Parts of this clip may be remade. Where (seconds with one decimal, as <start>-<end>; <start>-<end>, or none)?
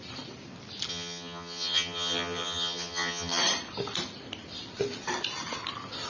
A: 0.9-3.4